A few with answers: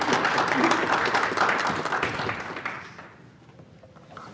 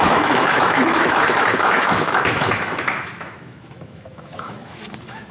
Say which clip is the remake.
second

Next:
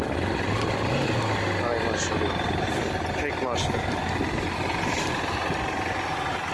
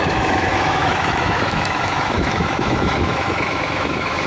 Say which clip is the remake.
second